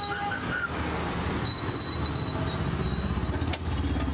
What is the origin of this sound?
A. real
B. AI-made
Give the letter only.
A